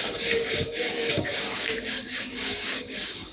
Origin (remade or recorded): remade